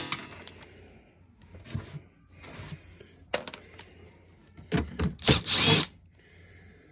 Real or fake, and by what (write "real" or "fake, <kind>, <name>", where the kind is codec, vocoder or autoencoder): real